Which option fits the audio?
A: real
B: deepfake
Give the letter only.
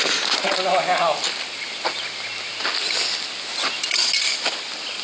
A